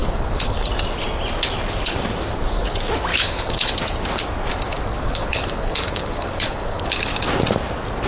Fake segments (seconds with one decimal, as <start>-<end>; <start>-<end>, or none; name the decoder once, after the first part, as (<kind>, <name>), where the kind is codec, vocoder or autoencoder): 0.0-0.7 (codec, HILCodec); 3.1-3.7; 4.9-7.0

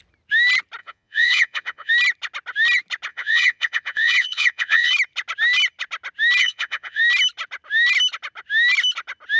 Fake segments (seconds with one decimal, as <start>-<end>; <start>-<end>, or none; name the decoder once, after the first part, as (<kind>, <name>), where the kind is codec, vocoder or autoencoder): 0.8-1.9 (vocoder, Vocos); 3.1-4.9; 6.4-7.0

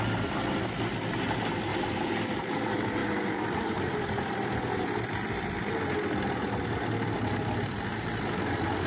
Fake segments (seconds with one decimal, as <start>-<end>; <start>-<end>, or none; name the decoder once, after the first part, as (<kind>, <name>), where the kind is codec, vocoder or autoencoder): 1.7-2.6 (vocoder, BigVGAN v2)

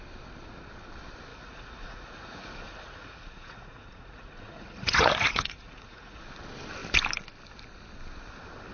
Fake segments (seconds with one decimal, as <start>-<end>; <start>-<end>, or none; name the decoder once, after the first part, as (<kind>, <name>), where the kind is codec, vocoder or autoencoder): 1.3-6.2 (vocoder, Vocos)

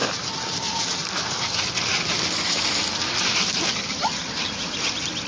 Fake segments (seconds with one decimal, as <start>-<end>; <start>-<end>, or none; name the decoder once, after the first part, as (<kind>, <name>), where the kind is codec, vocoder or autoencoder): 0.0-5.3 (vocoder, BigVGAN v2)

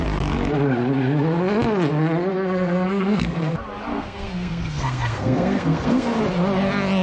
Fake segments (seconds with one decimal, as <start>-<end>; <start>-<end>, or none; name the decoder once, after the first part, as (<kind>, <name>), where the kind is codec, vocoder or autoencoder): 2.3-3.5 (codec, SNAC); 3.9-6.2

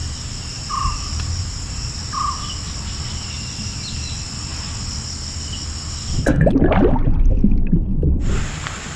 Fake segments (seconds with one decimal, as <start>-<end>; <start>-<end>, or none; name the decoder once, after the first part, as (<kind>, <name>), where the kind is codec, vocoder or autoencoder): none